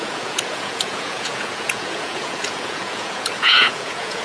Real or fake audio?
fake